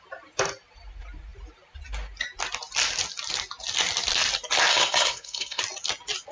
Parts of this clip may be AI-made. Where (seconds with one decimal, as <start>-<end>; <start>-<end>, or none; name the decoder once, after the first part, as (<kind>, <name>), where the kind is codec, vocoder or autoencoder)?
4.7-5.6 (codec, SNAC)